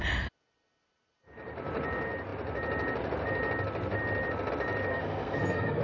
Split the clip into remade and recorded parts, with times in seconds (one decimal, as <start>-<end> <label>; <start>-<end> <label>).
0.0-4.9 recorded; 4.9-5.8 remade